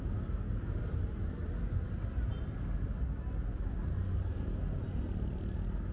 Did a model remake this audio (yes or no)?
no